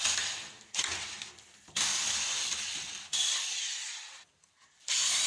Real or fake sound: fake